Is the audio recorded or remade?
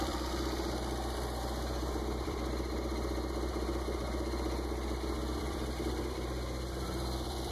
remade